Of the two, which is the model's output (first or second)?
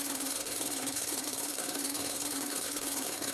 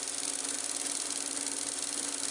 first